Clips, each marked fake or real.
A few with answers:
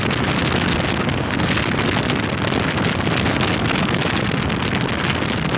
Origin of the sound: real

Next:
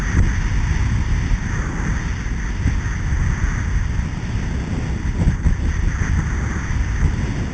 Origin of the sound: real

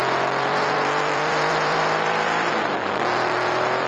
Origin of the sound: fake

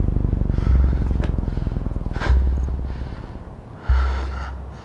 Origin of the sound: real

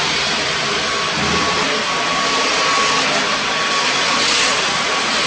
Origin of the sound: real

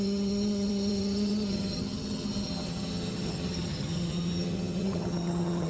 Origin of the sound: fake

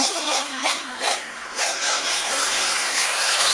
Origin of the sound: fake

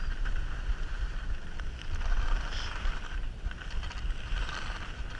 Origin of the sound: fake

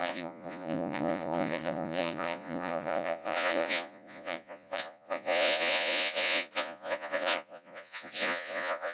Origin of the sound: fake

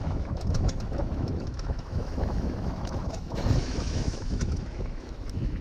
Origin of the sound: fake